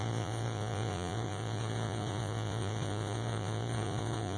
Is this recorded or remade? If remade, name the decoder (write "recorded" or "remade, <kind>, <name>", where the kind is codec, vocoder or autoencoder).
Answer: remade, vocoder, Vocos